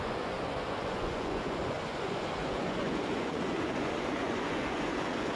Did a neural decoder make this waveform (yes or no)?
yes